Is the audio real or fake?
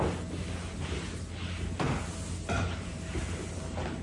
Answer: real